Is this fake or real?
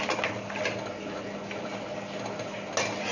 real